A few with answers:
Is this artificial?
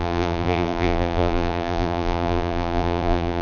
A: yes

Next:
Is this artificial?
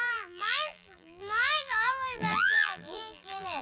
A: yes